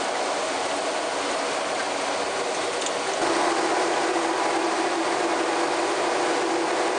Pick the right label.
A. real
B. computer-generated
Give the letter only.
A